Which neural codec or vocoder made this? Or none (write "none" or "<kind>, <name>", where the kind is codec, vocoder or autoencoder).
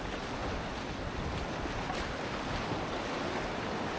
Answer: none